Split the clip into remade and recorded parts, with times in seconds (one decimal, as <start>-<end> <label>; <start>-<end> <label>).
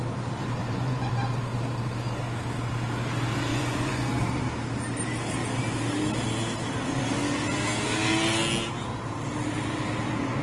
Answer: 0.0-0.6 recorded; 0.6-1.1 remade; 1.1-3.5 recorded; 3.5-4.1 remade; 4.1-10.4 recorded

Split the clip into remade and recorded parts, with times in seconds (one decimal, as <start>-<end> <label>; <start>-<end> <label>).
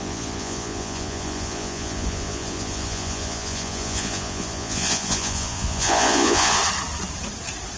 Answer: 0.0-6.6 remade; 6.6-7.8 recorded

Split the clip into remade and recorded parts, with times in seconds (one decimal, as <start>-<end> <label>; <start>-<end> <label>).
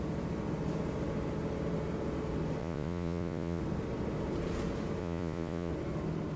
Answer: 0.0-2.6 recorded; 2.6-3.6 remade; 3.6-5.0 recorded; 5.0-5.7 remade; 5.7-6.4 recorded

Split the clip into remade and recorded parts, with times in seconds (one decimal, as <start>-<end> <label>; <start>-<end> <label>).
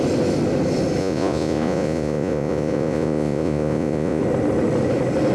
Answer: 0.0-1.0 recorded; 1.0-4.2 remade; 4.2-5.3 recorded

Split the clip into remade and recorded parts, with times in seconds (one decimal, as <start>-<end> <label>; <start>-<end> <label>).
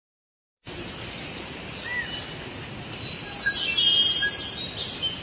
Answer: 0.0-5.2 recorded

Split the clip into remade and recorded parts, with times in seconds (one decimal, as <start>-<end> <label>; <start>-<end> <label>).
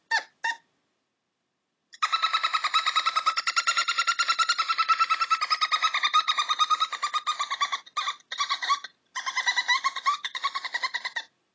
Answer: 0.0-11.5 recorded